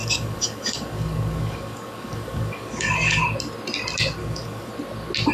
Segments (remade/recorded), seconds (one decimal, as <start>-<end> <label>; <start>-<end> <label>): 0.0-3.2 remade; 3.2-4.2 recorded; 4.2-4.7 remade; 4.7-5.3 recorded